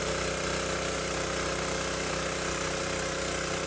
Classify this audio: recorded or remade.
recorded